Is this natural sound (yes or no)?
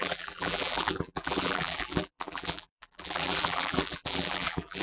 no